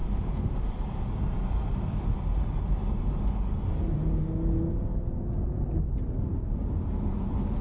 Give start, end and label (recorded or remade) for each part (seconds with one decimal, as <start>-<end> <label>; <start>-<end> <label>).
0.0-7.6 recorded